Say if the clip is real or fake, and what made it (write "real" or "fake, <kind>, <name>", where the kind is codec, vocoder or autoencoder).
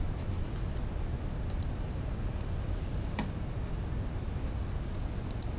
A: real